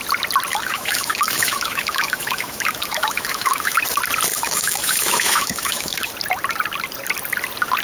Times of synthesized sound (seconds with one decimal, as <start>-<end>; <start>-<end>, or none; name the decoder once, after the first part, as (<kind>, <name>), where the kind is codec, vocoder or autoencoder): 0.5-3.8 (autoencoder, DAC-VAE); 4.3-6.1